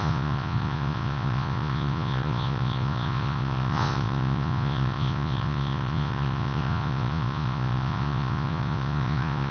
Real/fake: fake